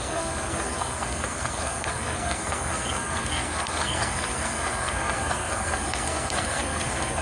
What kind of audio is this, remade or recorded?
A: remade